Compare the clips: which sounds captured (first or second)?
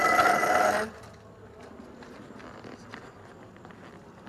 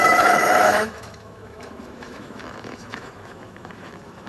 first